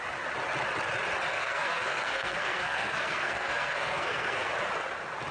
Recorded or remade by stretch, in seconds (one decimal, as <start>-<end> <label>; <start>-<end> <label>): 0.0-1.3 recorded; 1.3-4.5 remade; 4.5-5.3 recorded